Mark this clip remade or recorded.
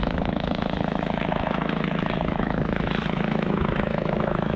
remade